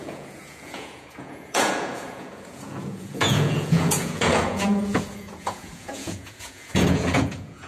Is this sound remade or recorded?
remade